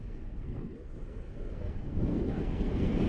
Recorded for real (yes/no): no